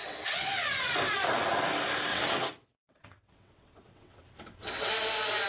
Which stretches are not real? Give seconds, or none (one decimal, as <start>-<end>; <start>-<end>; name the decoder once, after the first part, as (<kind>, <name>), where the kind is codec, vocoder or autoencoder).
0.0-0.5 (vocoder, WaveNeXt); 2.1-4.9

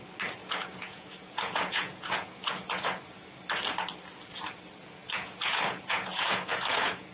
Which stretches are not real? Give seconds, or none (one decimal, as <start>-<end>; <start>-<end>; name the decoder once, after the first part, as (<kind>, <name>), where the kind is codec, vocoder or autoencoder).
0.4-3.3 (vocoder, Vocos); 4.8-7.1

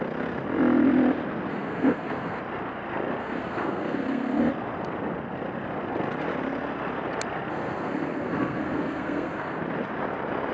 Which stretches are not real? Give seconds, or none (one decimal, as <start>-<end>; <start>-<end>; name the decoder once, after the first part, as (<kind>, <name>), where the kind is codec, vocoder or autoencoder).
1.5-2.4 (codec, SNAC); 3.2-4.5; 7.5-9.6

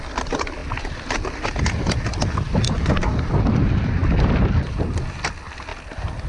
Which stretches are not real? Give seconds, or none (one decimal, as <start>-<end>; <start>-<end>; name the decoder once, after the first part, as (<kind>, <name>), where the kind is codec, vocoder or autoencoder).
none

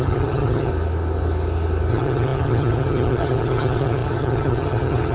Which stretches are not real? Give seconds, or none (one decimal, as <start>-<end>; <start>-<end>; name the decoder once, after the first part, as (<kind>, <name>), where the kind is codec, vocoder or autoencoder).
0.0-0.7 (vocoder, HiFi-GAN); 1.9-5.1

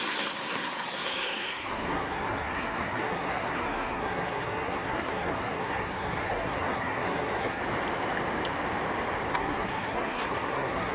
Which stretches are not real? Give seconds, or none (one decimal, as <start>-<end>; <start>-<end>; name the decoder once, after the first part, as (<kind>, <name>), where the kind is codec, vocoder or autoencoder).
0.0-7.6 (codec, SNAC); 9.3-10.9

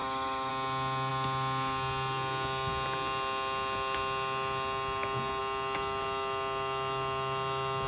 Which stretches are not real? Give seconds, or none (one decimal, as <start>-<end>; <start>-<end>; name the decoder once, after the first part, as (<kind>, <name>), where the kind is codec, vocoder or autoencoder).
0.0-0.5 (autoencoder, DAC-VAE)

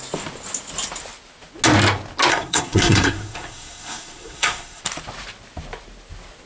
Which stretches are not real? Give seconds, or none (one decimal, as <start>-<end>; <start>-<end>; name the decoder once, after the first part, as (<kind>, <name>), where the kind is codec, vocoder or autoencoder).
2.3-4.8 (codec, SNAC)